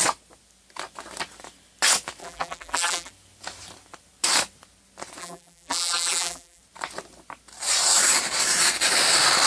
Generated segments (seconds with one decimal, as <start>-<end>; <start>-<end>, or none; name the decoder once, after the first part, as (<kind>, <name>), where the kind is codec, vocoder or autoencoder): 2.2-3.1 (vocoder, BigVGAN v2); 5.2-6.6